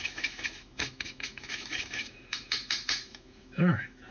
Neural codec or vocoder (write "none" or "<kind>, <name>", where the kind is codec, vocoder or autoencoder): autoencoder, DAC-VAE